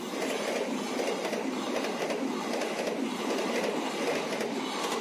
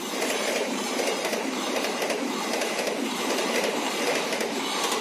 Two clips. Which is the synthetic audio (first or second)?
second